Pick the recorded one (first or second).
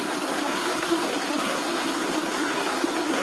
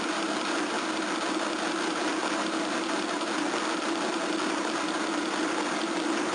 second